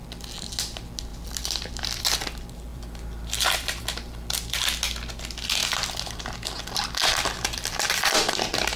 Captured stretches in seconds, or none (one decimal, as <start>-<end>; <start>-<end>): 0.0-1.1; 2.0-2.7; 3.8-7.0